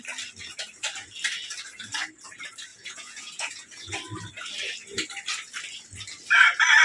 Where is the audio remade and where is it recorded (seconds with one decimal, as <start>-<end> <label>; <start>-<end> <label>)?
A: 0.0-2.7 recorded; 2.7-3.9 remade; 3.9-6.8 recorded